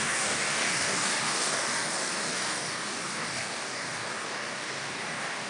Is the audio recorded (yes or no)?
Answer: no